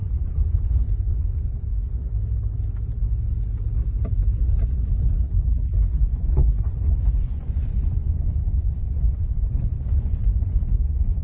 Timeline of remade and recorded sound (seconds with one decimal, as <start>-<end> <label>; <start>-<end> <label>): 0.0-1.6 remade; 1.6-6.0 recorded; 6.0-11.2 remade